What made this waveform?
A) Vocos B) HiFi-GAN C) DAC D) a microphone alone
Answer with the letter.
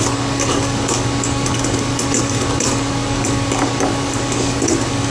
C